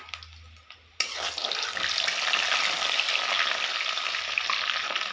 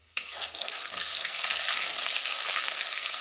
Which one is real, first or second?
first